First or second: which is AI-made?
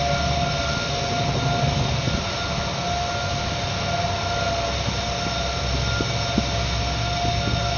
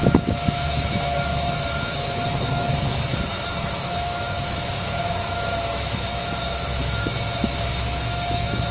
second